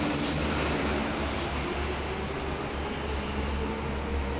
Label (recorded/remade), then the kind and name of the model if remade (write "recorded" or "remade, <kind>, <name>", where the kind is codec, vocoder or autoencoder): recorded